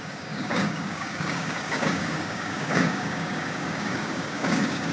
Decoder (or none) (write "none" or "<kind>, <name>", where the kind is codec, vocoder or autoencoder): codec, DAC